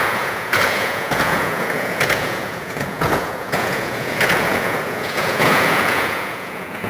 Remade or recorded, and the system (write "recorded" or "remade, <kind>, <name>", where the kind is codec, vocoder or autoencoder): remade, vocoder, Vocos